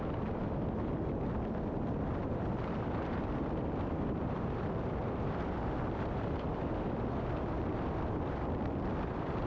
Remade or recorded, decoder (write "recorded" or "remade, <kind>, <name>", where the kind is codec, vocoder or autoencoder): remade, vocoder, BigVGAN v2